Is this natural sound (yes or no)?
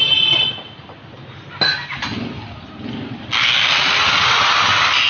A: yes